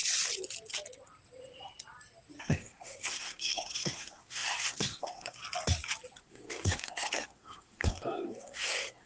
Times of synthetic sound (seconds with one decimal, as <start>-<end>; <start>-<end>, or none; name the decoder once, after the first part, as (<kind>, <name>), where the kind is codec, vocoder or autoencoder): 2.4-5.4 (codec, SNAC); 6.2-9.1